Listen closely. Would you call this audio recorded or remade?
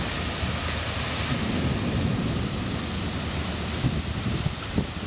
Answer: recorded